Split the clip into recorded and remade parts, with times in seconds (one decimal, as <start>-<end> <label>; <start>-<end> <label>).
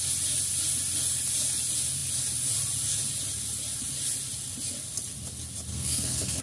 0.0-5.7 recorded; 5.7-6.4 remade